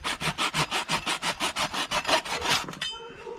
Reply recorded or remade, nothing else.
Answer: recorded